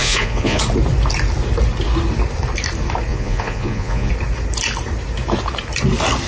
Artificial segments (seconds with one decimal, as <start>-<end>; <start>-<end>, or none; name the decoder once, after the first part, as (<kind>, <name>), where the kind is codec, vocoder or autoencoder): 0.0-0.6 (vocoder, Vocos); 3.1-4.1